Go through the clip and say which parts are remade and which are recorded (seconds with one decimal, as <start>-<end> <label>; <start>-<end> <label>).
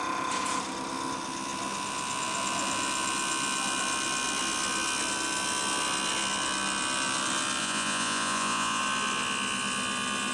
0.0-7.6 recorded; 7.6-8.8 remade; 8.8-10.3 recorded